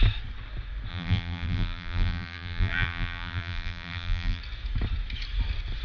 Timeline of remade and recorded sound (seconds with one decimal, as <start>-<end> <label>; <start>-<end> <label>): 0.0-0.9 recorded; 0.9-4.4 remade; 4.4-5.8 recorded